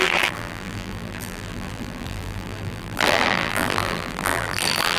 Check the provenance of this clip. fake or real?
fake